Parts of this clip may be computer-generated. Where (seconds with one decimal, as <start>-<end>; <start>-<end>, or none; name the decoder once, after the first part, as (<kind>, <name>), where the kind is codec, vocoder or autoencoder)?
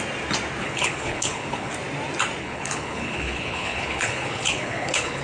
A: 0.6-1.7 (codec, HILCodec); 2.4-5.2